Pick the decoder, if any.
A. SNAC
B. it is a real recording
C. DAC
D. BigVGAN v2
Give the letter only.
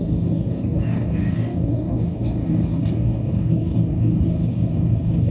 C